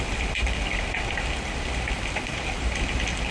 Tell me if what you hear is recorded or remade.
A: recorded